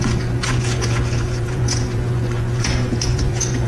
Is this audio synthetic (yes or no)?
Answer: yes